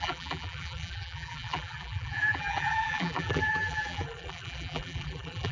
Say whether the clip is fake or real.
fake